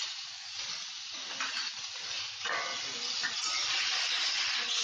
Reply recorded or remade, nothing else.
recorded